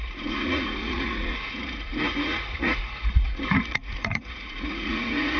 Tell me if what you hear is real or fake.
fake